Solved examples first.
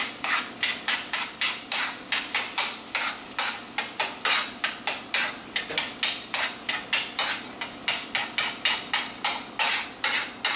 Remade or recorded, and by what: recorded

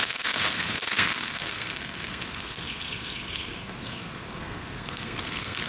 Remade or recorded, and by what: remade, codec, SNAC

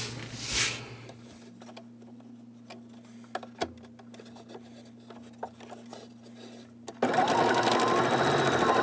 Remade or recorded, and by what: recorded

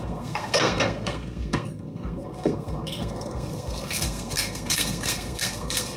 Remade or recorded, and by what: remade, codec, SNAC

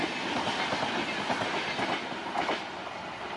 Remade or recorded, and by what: recorded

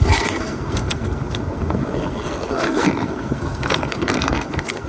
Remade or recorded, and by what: remade, codec, SNAC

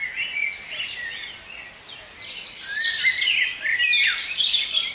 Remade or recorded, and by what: recorded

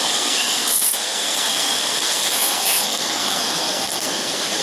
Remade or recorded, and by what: remade, codec, SNAC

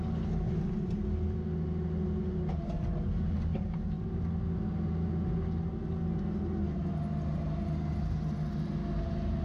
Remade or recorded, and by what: recorded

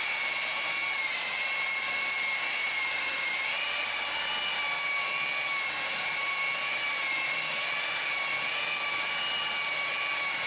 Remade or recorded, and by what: recorded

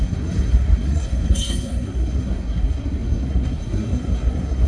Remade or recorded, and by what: remade, codec, SNAC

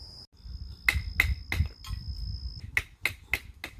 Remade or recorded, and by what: recorded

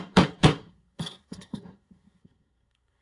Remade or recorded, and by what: remade, codec, SNAC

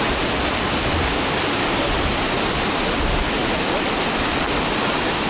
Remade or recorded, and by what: recorded